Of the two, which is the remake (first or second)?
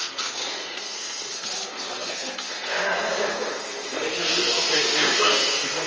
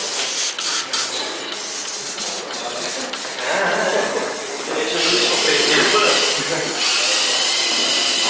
first